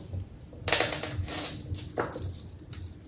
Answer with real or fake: real